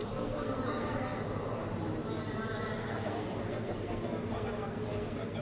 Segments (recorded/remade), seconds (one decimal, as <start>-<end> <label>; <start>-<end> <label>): 0.0-1.2 remade; 1.2-2.8 recorded; 2.8-5.4 remade